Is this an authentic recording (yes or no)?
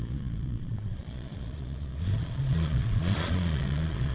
no